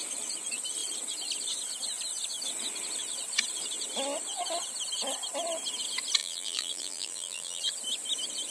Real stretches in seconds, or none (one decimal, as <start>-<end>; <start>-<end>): 0.0-6.2; 7.6-8.5